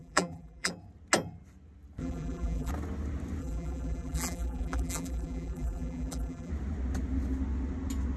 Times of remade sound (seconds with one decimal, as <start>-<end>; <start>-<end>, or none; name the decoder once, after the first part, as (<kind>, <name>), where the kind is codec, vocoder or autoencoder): 0.0-0.7 (vocoder, BigVGAN v2); 2.0-2.7; 3.4-6.5